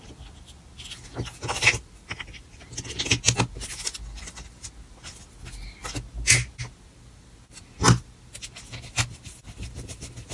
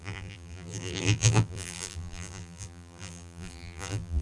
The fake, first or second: second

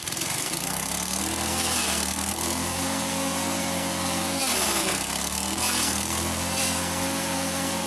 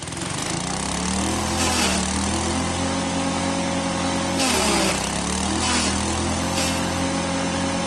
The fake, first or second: first